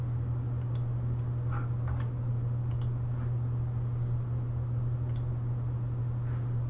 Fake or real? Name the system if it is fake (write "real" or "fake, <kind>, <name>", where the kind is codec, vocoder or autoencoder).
real